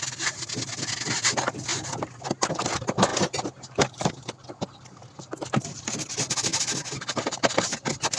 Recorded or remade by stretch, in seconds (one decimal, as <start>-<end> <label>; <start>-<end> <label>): 0.0-8.2 recorded